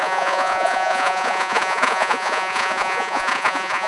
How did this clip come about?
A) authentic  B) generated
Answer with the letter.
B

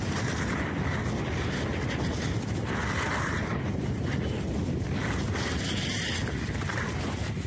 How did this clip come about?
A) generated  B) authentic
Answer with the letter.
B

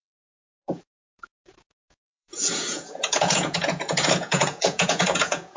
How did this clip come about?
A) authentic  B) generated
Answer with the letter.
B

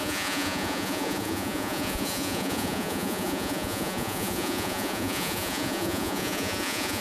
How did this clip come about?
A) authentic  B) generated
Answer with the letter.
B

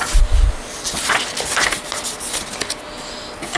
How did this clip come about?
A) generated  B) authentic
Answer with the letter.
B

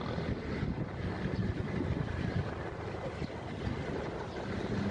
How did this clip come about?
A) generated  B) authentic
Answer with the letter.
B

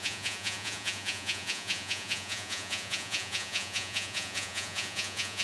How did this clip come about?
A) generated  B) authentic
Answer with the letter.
A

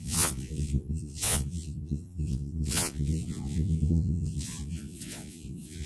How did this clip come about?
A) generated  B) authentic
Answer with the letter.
A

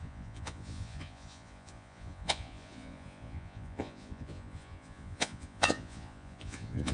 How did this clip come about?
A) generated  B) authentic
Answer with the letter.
A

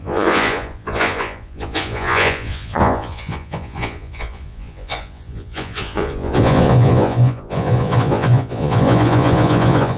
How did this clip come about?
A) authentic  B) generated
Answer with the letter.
B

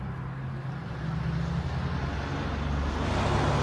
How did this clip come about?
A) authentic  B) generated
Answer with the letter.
A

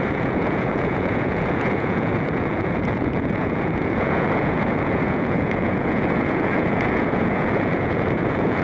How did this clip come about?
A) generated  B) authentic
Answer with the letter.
A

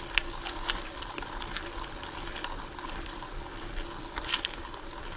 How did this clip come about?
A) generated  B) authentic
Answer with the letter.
B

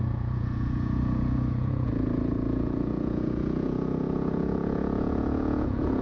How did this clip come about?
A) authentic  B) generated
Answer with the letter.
B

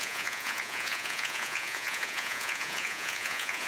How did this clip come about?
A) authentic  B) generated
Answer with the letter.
B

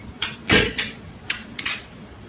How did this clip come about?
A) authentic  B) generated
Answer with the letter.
B